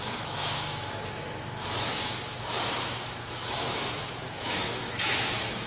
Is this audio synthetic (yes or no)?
yes